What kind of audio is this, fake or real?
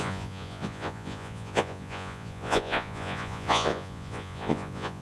fake